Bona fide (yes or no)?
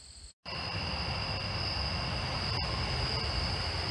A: yes